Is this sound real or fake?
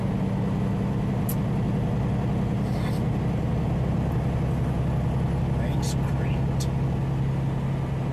real